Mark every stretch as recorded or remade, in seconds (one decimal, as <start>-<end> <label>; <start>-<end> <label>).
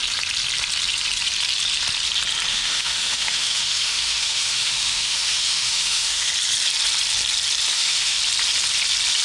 0.0-2.5 recorded; 2.5-6.3 remade; 6.3-7.7 recorded; 7.7-8.2 remade; 8.2-9.2 recorded